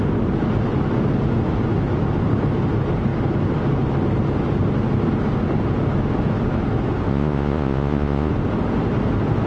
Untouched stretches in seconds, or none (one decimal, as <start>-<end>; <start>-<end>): 0.0-7.1; 8.3-9.5